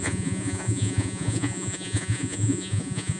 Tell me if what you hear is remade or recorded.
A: remade